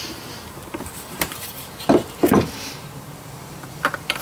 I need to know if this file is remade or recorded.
remade